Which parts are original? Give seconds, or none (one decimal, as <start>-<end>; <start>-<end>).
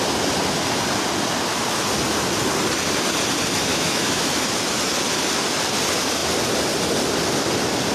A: 0.0-3.7; 4.2-7.9